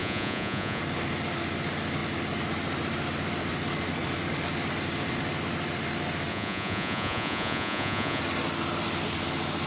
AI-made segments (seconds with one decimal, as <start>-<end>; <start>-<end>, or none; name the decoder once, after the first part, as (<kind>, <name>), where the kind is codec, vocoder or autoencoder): 0.0-0.8 (vocoder, Vocos); 6.3-8.2

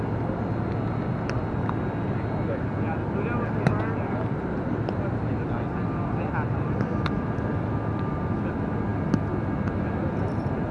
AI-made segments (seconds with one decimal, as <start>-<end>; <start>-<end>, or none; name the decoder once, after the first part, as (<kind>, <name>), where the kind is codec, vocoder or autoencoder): none

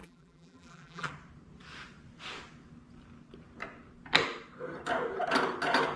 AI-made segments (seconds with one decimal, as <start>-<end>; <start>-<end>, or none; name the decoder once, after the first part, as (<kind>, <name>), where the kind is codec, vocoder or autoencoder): 0.0-1.1 (vocoder, BigVGAN v2)

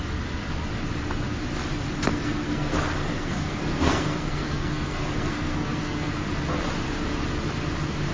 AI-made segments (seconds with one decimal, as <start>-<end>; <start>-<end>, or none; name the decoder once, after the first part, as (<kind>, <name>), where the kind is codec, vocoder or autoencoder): 2.1-6.1 (codec, SNAC)

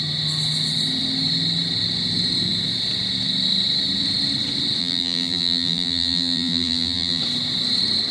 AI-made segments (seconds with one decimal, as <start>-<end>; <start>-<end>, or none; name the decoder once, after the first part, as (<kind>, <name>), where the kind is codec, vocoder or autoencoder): 4.8-7.2 (vocoder, BigVGAN v2)

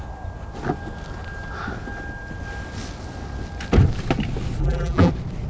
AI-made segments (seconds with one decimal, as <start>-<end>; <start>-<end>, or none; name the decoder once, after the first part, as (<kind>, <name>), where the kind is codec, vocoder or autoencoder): 4.6-5.1 (vocoder, BigVGAN v2)

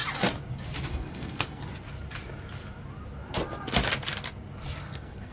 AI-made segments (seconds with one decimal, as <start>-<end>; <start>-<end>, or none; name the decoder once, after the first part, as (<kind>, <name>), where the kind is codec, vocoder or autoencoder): 0.9-1.6 (codec, SNAC); 4.8-5.3

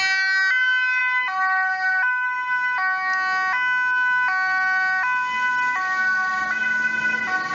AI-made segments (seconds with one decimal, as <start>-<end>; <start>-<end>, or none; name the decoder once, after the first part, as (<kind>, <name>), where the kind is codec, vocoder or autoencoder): none